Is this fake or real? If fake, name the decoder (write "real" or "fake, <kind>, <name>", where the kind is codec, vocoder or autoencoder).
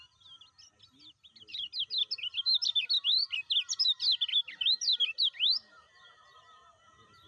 real